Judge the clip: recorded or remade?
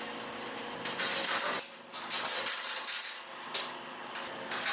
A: recorded